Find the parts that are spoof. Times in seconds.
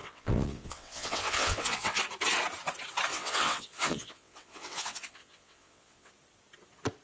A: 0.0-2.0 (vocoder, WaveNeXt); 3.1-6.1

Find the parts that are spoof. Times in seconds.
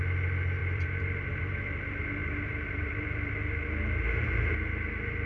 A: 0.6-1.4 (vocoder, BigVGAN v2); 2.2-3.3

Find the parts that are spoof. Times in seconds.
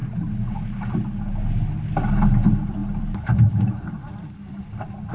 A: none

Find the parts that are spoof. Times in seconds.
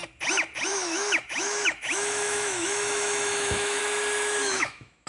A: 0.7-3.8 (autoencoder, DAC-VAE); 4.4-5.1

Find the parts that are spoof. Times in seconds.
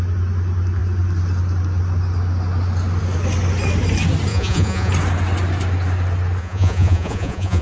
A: 4.3-4.9 (vocoder, Vocos); 6.4-7.6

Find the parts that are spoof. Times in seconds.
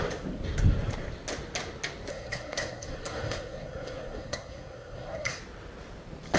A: 2.1-5.4 (codec, SNAC)